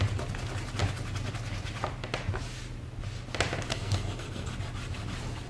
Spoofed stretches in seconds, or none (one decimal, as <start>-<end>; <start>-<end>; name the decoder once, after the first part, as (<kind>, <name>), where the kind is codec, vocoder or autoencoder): 3.7-4.5 (codec, SNAC)